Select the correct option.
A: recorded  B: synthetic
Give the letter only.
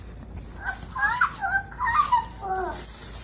A